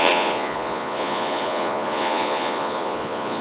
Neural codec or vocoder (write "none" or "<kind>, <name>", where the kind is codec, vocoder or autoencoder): vocoder, Vocos